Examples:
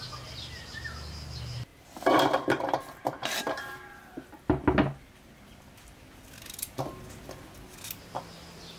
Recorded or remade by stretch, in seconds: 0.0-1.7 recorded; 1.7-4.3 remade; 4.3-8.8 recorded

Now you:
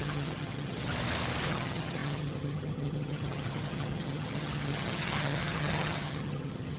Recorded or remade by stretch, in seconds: 0.0-0.9 remade; 0.9-1.5 recorded; 1.5-6.8 remade